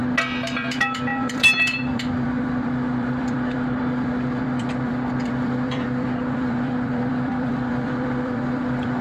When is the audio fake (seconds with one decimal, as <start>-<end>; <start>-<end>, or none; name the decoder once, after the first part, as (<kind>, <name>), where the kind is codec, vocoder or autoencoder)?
0.6-9.0 (vocoder, BigVGAN v2)